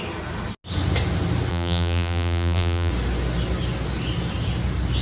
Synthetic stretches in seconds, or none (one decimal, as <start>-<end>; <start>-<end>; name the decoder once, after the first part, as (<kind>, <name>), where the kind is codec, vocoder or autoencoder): 1.5-2.9 (vocoder, BigVGAN v2)

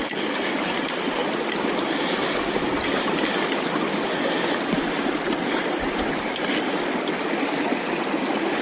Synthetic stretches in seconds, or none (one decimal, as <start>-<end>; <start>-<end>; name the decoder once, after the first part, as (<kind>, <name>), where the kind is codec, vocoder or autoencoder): none

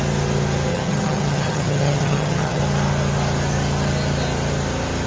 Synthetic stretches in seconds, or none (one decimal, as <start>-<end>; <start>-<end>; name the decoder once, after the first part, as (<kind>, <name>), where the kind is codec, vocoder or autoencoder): 0.7-2.6 (vocoder, HiFi-GAN)